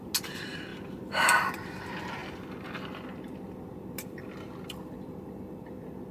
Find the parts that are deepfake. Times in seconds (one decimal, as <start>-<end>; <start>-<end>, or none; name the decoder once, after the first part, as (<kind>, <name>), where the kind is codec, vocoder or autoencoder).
none